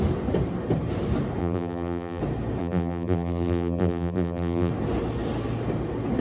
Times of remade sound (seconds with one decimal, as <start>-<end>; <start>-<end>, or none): 1.4-2.2; 2.6-4.7